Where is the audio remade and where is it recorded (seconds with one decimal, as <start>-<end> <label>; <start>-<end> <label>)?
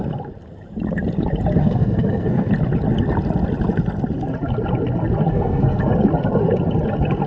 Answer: 0.0-1.6 recorded; 1.6-2.5 remade; 2.5-5.3 recorded; 5.3-5.8 remade; 5.8-7.3 recorded